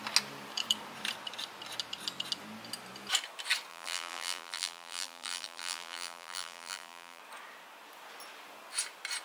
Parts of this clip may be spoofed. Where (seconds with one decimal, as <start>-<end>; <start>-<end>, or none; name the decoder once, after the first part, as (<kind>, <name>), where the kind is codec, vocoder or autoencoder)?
3.7-7.2 (vocoder, BigVGAN v2)